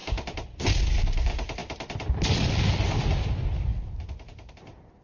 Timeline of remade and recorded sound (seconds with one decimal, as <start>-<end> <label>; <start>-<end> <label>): 0.0-5.0 recorded